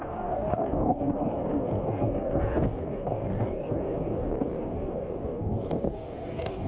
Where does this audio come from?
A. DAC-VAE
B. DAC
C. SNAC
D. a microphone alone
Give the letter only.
B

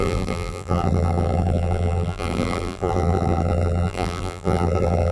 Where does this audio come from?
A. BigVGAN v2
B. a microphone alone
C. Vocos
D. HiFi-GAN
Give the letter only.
A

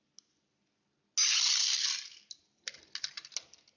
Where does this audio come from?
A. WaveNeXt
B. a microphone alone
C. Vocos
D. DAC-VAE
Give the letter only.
B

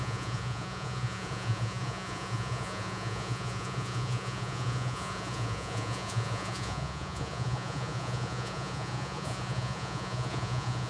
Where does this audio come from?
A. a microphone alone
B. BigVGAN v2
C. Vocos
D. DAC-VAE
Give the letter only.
C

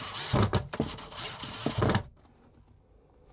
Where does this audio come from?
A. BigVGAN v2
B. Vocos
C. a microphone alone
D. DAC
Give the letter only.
C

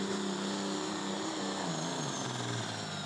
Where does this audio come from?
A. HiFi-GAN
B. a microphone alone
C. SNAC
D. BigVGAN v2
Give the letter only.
B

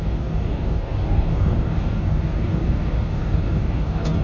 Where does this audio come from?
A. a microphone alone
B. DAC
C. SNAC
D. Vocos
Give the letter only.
B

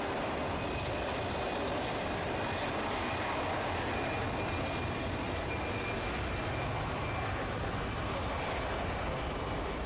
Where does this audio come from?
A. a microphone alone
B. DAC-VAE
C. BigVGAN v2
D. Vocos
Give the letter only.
A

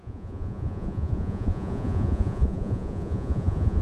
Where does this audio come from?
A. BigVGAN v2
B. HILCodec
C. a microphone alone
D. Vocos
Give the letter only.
D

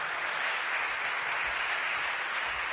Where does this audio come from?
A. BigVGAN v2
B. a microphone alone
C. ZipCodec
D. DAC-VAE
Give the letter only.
A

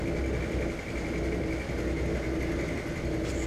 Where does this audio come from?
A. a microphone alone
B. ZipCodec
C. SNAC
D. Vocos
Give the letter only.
A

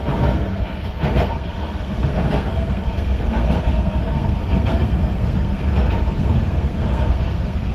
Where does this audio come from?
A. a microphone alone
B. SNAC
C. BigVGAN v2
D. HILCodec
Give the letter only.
B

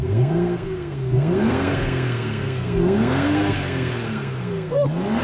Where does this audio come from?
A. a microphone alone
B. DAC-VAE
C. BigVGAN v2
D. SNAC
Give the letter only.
D